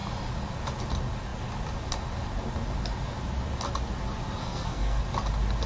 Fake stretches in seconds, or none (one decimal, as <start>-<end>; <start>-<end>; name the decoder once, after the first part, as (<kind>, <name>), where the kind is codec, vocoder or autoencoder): 4.4-5.0 (codec, SNAC)